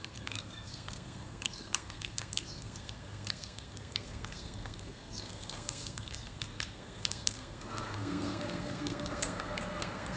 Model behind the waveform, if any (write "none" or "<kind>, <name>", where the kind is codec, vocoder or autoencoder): codec, SNAC